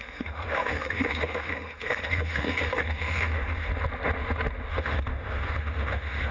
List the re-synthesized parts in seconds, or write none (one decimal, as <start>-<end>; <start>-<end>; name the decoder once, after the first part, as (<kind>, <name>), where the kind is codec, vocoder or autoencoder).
0.0-3.7 (autoencoder, DAC-VAE); 4.7-6.3